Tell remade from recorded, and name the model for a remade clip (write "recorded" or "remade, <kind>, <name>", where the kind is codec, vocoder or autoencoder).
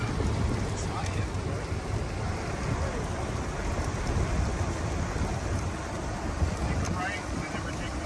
recorded